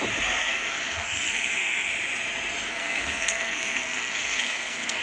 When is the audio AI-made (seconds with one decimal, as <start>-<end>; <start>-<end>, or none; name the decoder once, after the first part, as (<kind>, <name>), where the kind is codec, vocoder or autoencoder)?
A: 0.4-1.9 (codec, SNAC); 2.7-5.0